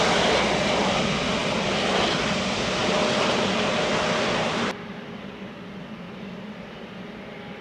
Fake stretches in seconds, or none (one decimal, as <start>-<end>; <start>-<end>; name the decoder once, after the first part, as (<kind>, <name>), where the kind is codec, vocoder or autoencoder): none